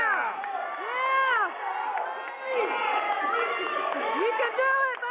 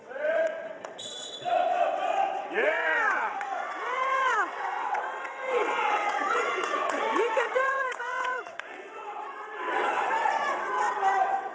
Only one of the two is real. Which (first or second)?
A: first